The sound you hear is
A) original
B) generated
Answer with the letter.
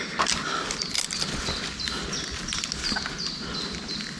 A